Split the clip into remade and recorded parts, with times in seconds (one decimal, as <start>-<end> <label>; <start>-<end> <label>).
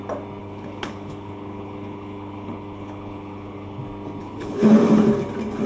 0.0-0.4 recorded; 0.4-3.8 remade; 3.8-4.2 recorded; 4.2-4.8 remade; 4.8-5.7 recorded